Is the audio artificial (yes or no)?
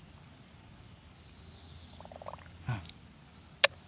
no